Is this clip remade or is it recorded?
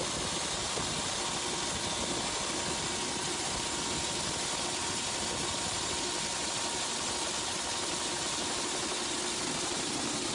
recorded